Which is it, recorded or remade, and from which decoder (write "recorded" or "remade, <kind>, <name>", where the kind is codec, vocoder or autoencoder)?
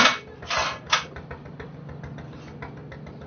recorded